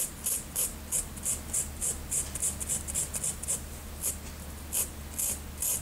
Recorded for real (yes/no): yes